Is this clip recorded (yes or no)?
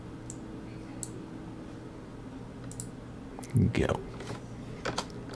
yes